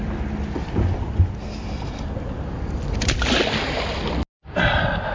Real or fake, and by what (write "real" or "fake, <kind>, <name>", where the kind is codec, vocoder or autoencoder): real